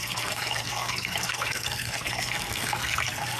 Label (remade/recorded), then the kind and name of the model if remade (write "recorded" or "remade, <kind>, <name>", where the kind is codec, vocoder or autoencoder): remade, codec, SNAC